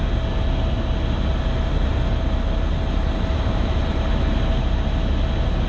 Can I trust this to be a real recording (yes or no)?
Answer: yes